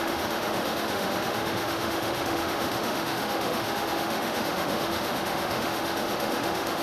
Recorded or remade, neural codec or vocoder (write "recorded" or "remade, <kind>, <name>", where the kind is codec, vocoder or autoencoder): remade, autoencoder, DAC-VAE